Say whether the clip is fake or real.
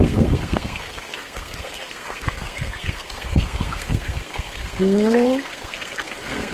fake